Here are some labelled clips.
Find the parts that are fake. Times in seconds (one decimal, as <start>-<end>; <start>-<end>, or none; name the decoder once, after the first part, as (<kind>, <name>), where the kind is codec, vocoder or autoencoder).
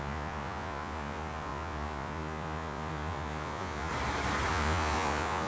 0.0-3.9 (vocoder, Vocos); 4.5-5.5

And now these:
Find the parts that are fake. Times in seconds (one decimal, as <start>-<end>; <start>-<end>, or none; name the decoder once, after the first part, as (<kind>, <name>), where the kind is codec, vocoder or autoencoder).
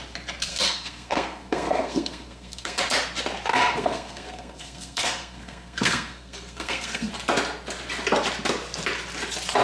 0.5-2.8 (codec, SNAC); 3.5-7.1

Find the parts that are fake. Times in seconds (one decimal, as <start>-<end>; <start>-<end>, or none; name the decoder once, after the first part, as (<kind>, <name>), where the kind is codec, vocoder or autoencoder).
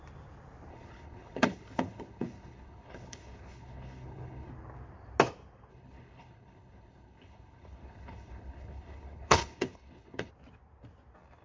0.7-4.5 (codec, HILCodec); 5.7-10.3